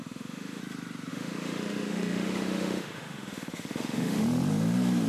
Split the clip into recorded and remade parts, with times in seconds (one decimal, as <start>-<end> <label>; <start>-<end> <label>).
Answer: 0.0-0.6 remade; 0.6-1.1 recorded; 1.1-4.2 remade; 4.2-5.1 recorded